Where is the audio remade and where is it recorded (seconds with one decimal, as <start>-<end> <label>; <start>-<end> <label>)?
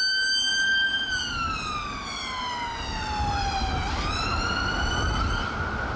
0.0-6.0 recorded